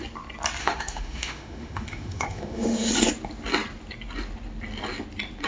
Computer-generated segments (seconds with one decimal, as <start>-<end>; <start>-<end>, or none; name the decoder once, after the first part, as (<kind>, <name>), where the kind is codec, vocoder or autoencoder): 0.6-2.9 (autoencoder, DAC-VAE)